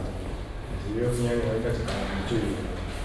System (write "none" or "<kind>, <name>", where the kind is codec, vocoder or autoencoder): none